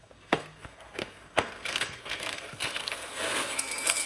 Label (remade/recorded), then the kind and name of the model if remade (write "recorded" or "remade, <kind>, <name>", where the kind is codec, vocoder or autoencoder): remade, codec, SNAC